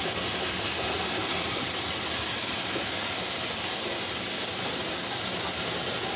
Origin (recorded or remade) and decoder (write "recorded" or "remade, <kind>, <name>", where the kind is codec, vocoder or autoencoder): recorded